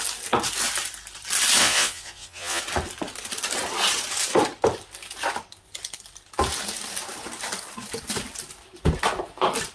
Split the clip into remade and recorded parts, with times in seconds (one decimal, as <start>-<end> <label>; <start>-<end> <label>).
0.0-1.6 recorded; 1.6-2.6 remade; 2.6-9.7 recorded